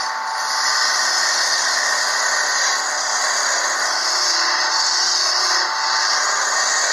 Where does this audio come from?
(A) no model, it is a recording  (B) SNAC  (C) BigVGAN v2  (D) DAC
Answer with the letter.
A